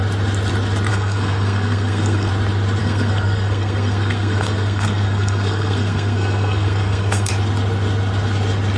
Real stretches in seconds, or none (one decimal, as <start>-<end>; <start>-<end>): 0.0-0.9; 2.3-2.8; 7.3-8.8